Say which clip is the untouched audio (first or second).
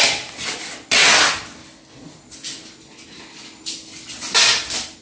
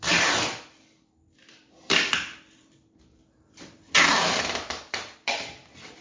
first